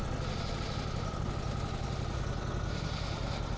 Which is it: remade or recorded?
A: recorded